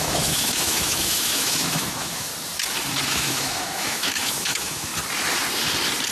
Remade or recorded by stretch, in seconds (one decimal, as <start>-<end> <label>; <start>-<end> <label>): 0.0-2.3 remade; 2.3-3.1 recorded; 3.1-4.9 remade; 4.9-6.1 recorded